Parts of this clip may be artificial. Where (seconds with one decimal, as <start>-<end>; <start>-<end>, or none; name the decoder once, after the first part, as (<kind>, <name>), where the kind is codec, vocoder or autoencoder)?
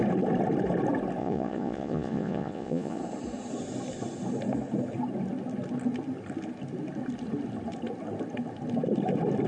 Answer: 1.2-3.0 (vocoder, Vocos)